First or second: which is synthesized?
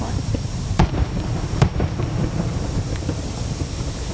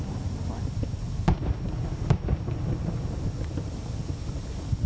first